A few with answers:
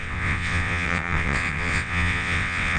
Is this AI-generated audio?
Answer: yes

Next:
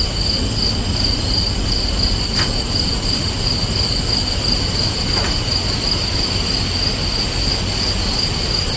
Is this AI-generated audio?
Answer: no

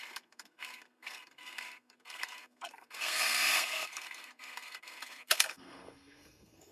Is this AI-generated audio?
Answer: yes